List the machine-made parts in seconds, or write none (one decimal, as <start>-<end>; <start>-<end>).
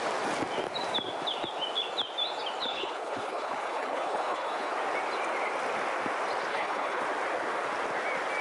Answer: 2.6-4.7; 6.5-7.0